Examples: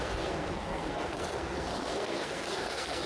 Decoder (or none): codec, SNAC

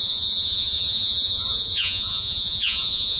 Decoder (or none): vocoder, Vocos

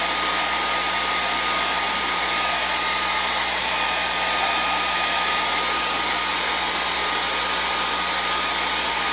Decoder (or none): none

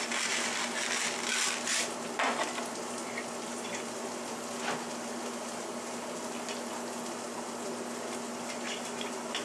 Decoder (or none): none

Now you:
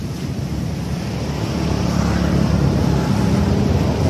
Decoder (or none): none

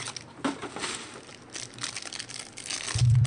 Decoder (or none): none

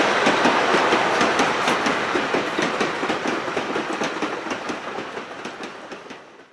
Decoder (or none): none